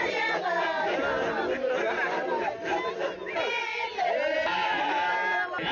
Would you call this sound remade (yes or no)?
no